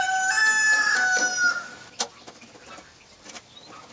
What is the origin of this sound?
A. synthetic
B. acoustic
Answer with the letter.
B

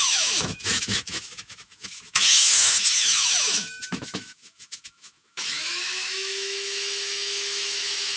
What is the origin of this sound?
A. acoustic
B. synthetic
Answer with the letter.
B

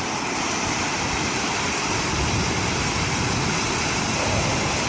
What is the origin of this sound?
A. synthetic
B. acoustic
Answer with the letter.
B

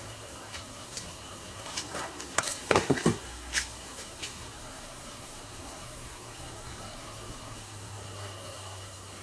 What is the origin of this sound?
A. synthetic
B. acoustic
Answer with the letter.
A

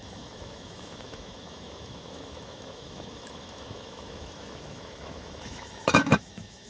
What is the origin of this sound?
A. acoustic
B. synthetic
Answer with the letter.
B